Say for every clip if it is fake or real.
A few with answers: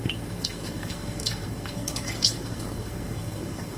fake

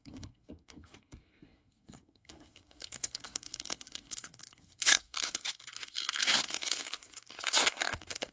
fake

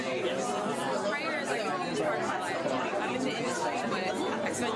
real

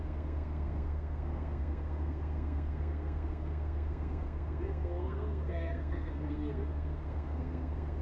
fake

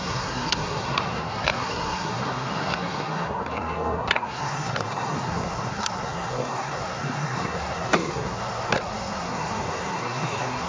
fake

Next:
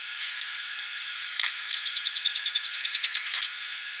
fake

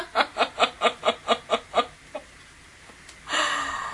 real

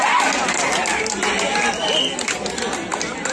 real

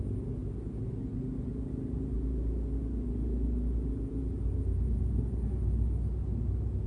real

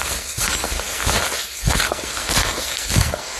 fake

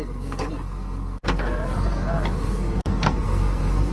fake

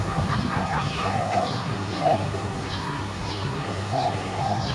fake